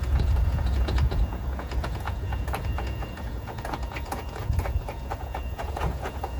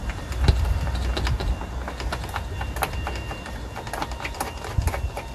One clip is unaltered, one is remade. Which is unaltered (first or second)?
second